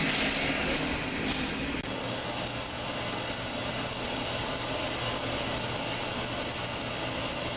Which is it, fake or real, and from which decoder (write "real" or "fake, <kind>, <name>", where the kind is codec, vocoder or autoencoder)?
real